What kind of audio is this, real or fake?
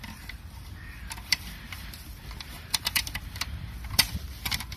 fake